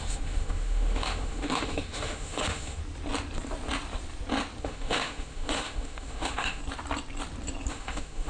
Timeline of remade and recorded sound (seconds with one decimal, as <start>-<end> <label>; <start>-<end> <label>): 0.0-2.8 remade; 2.8-4.6 recorded; 4.6-6.6 remade; 6.6-7.7 recorded; 7.7-8.3 remade